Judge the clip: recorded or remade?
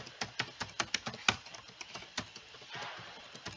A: recorded